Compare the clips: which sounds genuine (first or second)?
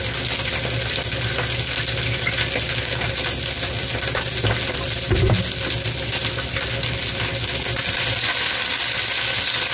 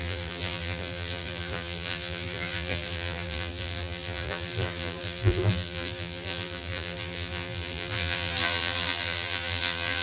first